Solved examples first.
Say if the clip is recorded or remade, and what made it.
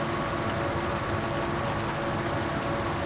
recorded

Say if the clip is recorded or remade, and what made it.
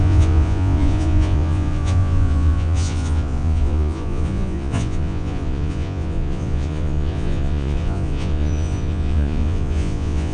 remade, vocoder, Vocos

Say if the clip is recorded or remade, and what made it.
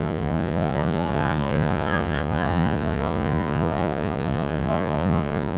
remade, vocoder, Vocos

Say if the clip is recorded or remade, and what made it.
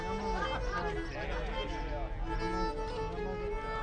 recorded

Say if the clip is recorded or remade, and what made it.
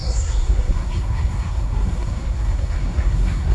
remade, codec, SNAC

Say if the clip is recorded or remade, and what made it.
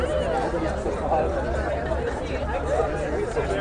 recorded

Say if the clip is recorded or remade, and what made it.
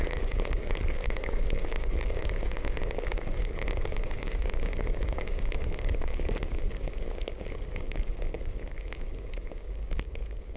remade, codec, DAC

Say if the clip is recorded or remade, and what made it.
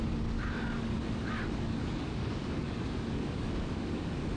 remade, codec, DAC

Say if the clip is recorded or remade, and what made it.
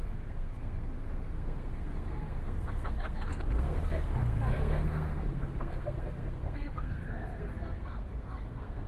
remade, codec, SNAC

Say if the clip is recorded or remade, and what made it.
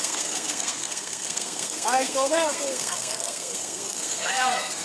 remade, codec, SNAC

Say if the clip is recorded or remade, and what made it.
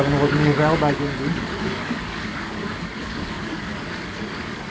remade, codec, DAC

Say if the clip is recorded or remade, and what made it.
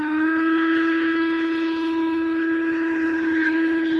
remade, codec, HILCodec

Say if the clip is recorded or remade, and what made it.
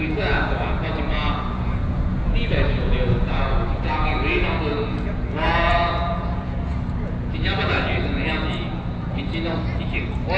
remade, vocoder, Vocos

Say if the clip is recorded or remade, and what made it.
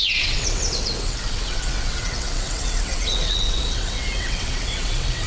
remade, vocoder, WaveNeXt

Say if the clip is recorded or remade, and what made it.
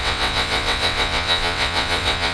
remade, vocoder, WaveNeXt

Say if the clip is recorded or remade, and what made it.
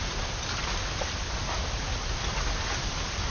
recorded